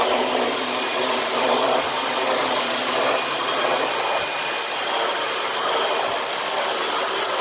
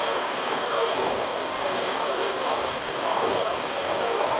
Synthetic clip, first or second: second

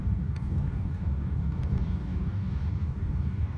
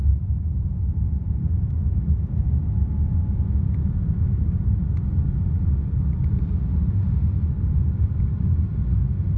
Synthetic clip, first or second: first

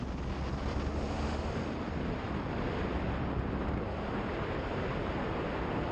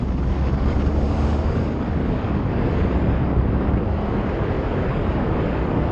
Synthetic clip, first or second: second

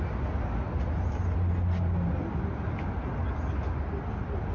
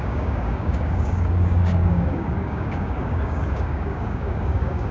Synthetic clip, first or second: second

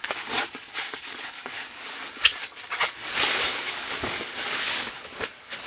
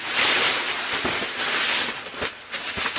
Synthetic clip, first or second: first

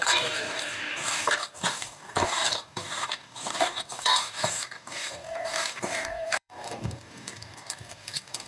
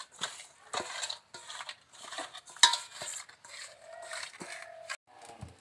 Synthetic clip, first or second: first